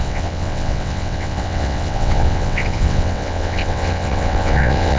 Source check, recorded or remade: remade